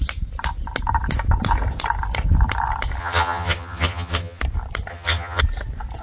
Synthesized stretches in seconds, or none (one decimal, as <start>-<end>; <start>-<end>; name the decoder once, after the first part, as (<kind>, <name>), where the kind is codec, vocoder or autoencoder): 3.0-4.4 (vocoder, HiFi-GAN); 4.9-5.4